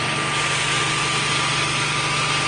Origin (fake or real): real